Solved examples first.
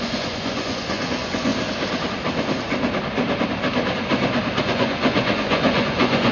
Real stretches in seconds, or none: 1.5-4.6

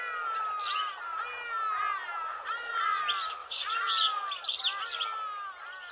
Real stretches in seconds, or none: 0.0-2.3; 3.0-3.4; 3.9-5.9